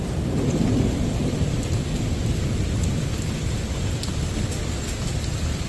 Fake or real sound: real